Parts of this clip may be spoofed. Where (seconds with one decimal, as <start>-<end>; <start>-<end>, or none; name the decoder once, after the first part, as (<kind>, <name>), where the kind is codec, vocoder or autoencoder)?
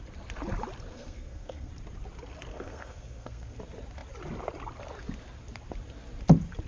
0.9-1.7 (codec, SNAC); 2.5-3.6